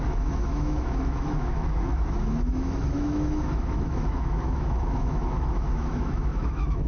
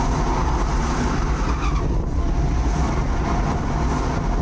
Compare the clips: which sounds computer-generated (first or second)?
first